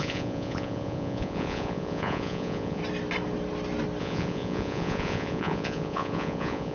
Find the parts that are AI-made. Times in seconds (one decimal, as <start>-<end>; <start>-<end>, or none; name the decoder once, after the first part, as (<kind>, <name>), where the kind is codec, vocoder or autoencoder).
0.0-2.8 (vocoder, Vocos); 4.0-6.7